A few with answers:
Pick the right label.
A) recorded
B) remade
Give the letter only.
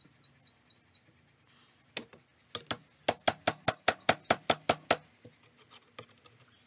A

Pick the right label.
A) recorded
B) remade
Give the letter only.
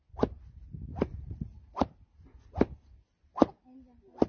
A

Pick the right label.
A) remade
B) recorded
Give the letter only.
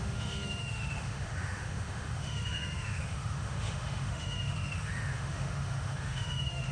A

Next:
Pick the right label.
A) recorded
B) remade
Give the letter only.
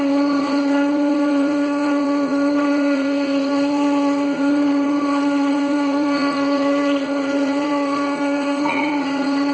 B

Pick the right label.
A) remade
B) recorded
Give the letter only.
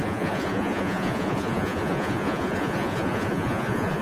A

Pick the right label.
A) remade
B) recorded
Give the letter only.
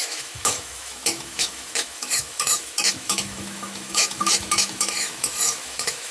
A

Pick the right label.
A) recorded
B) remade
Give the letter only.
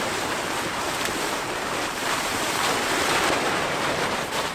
B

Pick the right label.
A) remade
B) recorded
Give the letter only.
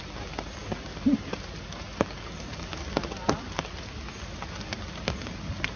B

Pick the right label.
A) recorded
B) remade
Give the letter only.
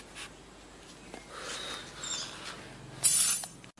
A